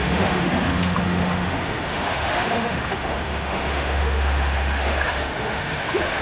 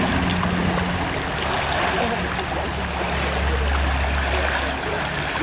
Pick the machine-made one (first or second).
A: first